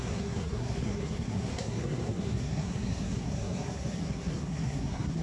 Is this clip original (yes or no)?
no